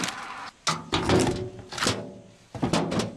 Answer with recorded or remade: recorded